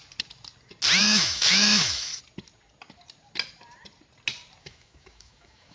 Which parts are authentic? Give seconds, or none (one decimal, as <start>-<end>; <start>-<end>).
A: 0.0-1.0; 2.1-4.6